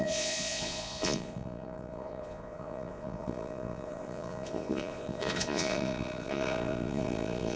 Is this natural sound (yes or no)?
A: no